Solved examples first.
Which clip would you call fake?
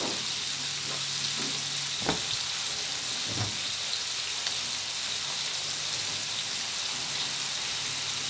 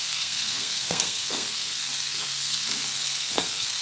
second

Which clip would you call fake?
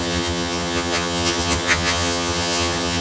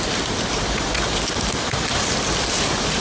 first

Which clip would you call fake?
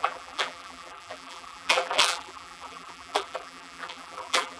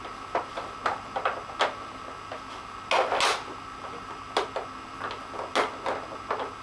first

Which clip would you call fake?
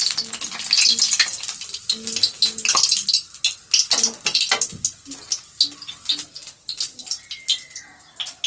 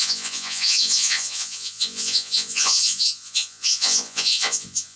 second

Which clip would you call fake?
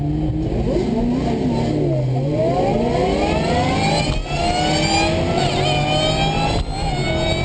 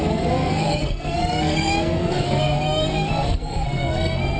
second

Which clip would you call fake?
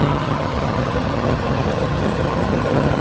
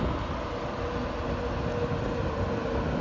first